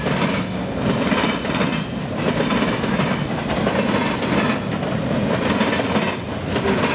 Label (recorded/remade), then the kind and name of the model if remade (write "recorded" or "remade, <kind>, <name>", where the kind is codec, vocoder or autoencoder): recorded